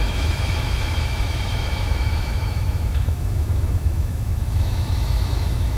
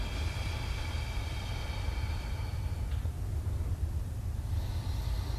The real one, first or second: second